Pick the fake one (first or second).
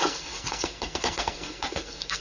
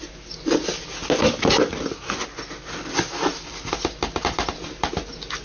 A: first